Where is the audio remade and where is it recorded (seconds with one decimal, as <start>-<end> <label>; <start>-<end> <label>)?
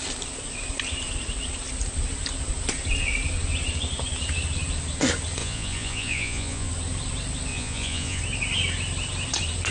0.0-5.4 recorded; 5.4-6.7 remade; 6.7-7.5 recorded; 7.5-8.2 remade; 8.2-9.7 recorded